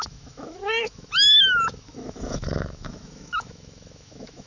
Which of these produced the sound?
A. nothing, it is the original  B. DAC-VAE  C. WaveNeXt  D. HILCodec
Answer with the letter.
B